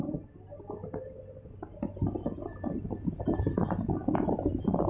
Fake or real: real